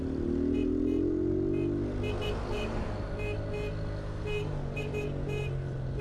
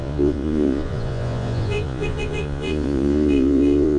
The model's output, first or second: second